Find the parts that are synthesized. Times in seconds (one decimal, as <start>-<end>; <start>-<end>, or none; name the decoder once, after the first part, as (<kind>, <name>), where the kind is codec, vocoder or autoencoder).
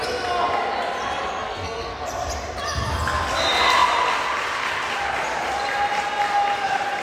1.4-2.0 (codec, SNAC)